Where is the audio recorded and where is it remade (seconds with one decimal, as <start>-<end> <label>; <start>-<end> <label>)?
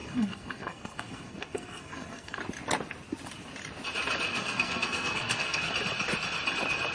0.0-2.4 remade; 2.4-4.3 recorded; 4.3-5.7 remade; 5.7-6.9 recorded